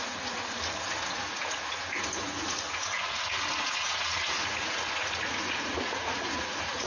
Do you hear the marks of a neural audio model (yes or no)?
yes